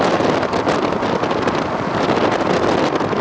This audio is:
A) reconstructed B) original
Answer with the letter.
B